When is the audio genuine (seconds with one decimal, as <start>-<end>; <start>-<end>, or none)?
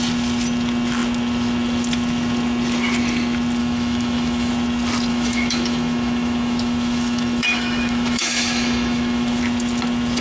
0.0-3.6; 4.5-5.1; 9.4-10.2